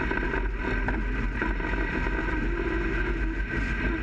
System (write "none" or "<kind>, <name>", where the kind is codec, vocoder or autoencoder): none